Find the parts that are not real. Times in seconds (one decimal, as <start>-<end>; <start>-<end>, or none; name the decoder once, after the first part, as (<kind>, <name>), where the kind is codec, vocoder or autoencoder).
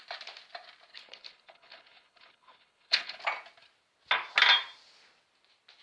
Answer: 0.9-3.2 (codec, HILCodec)